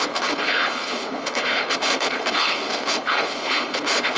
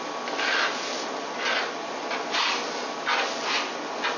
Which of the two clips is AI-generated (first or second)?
first